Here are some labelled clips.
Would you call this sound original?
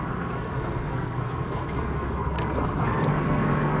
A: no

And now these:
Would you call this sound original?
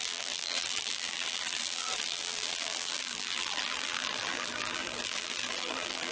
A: no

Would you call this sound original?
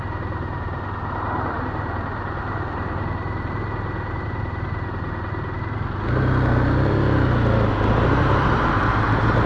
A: yes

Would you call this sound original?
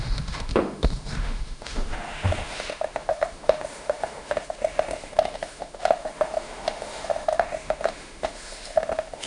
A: no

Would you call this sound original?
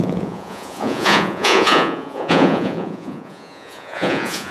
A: no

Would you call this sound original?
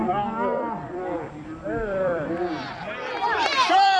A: no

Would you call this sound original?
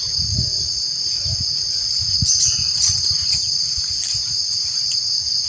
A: yes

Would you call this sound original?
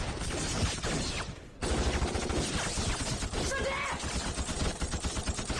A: yes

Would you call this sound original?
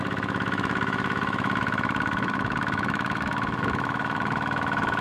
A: no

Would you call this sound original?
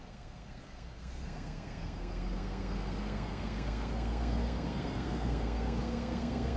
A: no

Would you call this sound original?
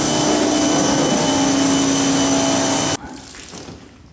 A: yes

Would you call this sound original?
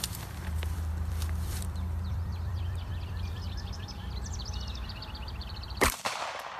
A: no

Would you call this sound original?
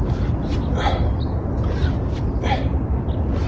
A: yes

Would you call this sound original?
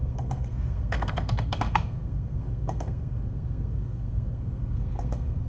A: no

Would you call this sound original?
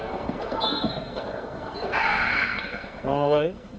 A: no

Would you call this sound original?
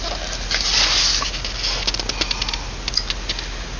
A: yes